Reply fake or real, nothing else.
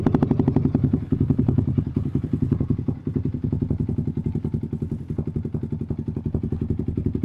real